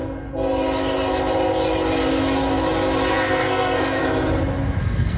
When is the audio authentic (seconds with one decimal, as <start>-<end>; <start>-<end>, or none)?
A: 0.0-3.1; 4.0-4.8